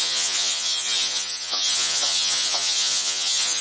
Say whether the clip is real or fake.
fake